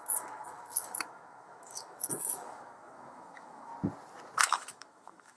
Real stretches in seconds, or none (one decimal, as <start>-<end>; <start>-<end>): 3.7-4.4